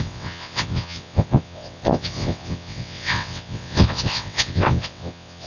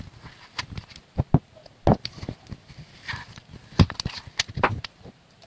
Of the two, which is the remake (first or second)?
first